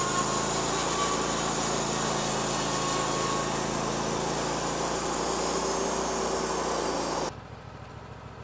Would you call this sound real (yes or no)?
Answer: yes